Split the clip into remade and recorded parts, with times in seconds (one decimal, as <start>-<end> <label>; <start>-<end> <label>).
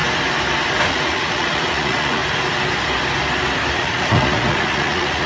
0.0-0.9 recorded; 0.9-2.2 remade; 2.2-3.7 recorded; 3.7-5.3 remade